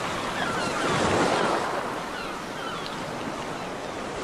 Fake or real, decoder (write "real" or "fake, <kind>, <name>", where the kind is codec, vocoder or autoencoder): real